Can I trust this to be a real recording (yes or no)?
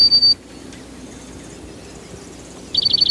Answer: yes